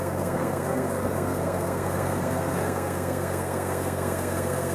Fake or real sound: fake